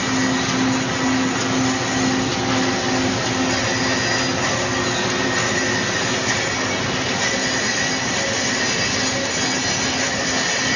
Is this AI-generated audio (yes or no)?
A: no